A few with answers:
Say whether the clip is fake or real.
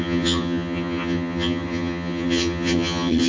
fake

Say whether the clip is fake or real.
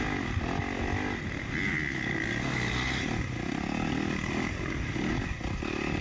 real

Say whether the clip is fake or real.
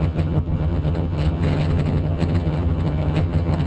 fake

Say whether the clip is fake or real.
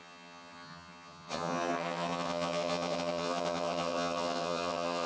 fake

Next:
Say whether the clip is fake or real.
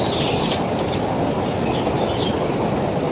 real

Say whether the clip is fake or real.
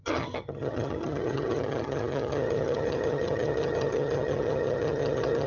fake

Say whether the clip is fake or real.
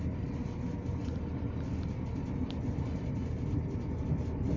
real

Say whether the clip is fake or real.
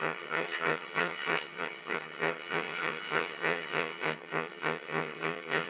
fake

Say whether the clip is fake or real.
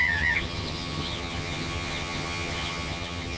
fake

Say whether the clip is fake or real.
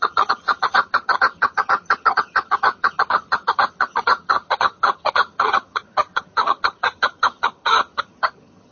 fake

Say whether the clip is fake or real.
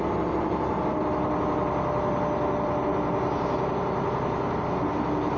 real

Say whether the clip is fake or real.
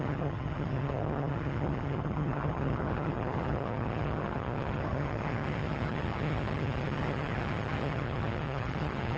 fake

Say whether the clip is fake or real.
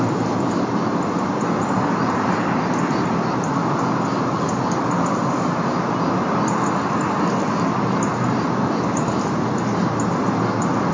real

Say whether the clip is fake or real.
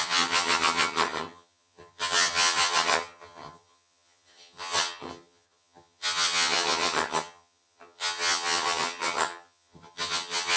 fake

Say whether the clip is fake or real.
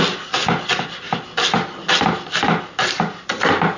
real